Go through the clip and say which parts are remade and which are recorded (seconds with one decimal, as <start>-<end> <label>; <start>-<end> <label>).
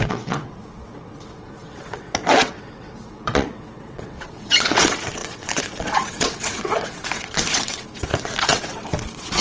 0.0-9.4 remade